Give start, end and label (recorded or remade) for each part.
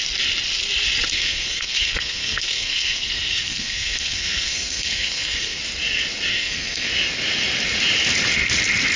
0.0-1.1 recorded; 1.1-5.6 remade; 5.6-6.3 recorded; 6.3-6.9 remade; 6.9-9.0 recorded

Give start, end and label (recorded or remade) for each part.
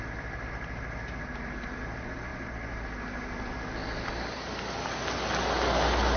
0.0-6.2 recorded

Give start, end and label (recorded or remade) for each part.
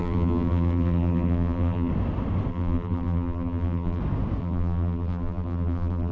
0.0-1.9 remade; 1.9-2.5 recorded; 2.5-4.0 remade; 4.0-4.4 recorded; 4.4-6.1 remade